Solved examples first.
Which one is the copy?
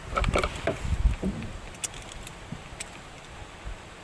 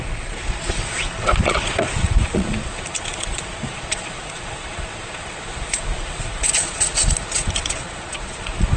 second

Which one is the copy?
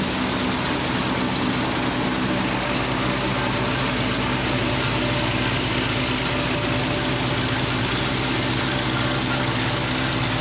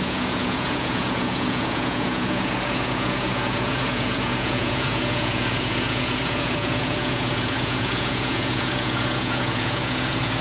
second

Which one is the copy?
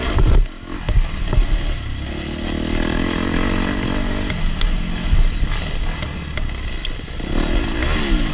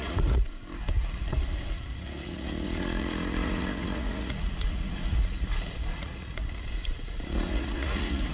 second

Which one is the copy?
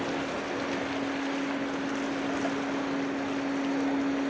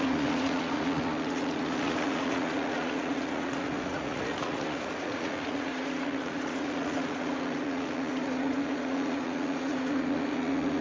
second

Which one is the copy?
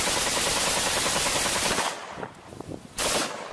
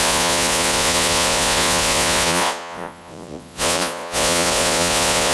second